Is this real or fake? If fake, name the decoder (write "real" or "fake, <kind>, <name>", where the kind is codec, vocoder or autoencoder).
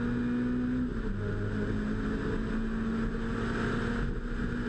real